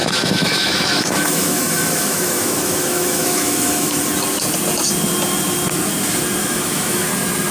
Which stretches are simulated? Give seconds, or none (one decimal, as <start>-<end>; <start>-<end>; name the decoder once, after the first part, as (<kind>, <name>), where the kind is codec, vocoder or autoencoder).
0.0-4.0 (autoencoder, DAC-VAE); 6.4-7.1